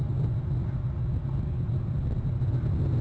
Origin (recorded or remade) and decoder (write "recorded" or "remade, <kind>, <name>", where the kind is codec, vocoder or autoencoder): recorded